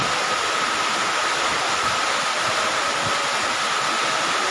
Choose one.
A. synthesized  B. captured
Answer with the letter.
B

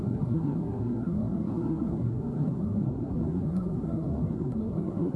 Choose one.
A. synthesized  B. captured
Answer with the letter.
A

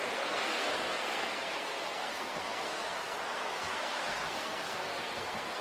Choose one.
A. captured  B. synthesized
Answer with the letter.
B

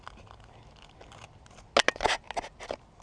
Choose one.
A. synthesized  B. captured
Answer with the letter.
B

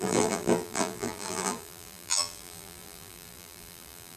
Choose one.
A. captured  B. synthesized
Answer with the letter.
B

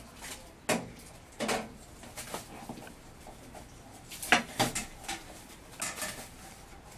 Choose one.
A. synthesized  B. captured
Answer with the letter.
B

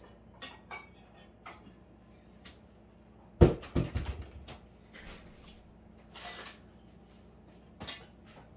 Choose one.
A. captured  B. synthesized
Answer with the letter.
A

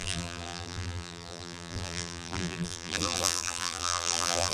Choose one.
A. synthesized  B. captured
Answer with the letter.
A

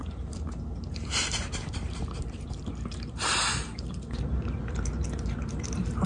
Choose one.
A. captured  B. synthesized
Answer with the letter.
B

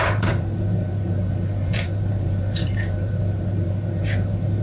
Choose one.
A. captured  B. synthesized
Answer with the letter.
B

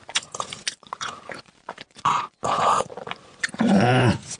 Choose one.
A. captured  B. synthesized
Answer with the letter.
B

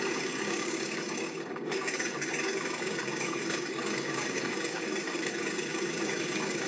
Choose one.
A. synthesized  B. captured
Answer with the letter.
A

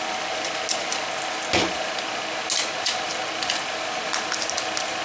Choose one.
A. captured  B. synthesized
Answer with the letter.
A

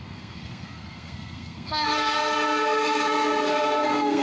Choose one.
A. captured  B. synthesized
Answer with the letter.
B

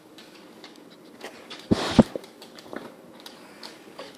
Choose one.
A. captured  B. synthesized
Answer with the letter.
B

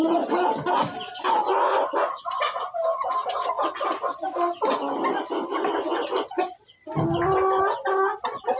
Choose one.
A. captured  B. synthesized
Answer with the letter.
A